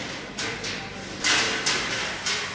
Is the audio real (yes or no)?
yes